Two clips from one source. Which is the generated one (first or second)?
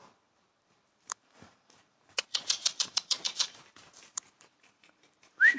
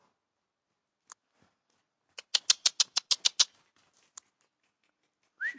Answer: first